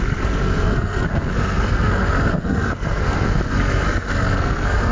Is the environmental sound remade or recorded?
remade